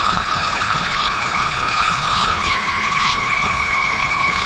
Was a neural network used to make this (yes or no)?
yes